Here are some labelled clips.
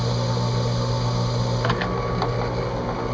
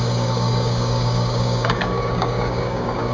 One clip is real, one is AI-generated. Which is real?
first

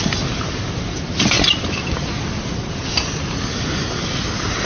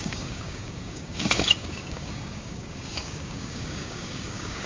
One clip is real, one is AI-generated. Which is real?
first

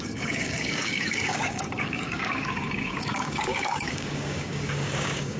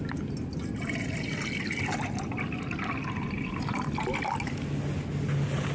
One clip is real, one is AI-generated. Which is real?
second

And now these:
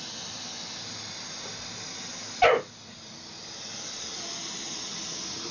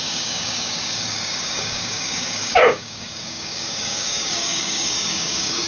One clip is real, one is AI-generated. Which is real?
first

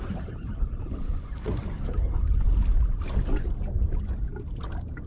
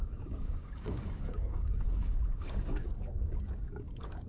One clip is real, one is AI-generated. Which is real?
first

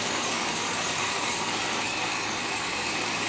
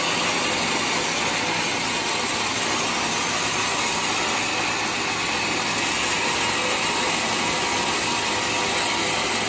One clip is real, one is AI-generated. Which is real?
second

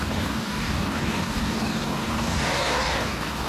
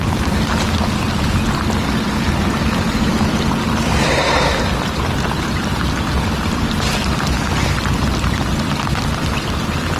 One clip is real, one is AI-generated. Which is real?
second